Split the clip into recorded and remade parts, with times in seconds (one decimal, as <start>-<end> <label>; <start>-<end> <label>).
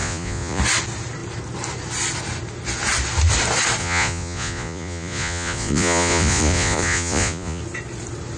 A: 0.0-0.6 remade; 0.6-3.8 recorded; 3.8-7.6 remade; 7.6-8.4 recorded